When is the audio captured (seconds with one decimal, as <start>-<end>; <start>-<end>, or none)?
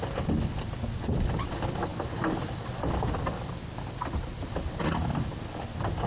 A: 0.0-6.1